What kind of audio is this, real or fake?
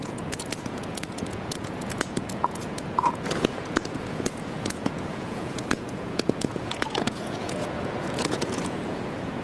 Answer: fake